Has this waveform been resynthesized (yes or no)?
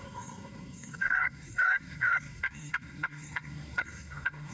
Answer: yes